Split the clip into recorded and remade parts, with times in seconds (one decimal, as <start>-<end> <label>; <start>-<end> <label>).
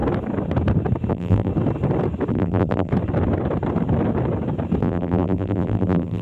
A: 0.0-1.1 recorded; 1.1-1.5 remade; 1.5-2.3 recorded; 2.3-2.9 remade; 2.9-4.8 recorded; 4.8-6.2 remade